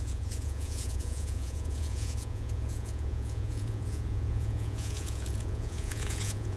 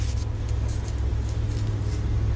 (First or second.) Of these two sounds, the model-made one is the first